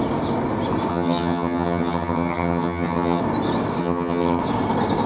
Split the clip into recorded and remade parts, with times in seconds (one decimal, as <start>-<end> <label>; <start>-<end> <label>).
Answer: 0.0-0.9 recorded; 0.9-3.2 remade; 3.2-3.8 recorded; 3.8-4.4 remade; 4.4-5.1 recorded